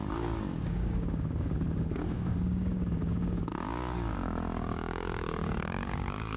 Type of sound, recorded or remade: remade